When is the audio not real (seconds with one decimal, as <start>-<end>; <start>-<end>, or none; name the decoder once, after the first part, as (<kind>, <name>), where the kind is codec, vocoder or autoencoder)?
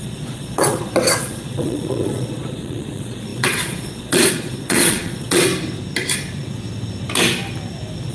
0.0-5.5 (vocoder, Vocos)